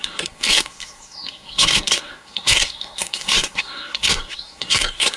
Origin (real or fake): fake